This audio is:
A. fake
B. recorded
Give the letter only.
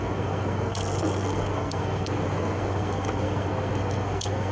A